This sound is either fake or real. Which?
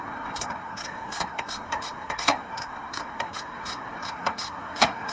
fake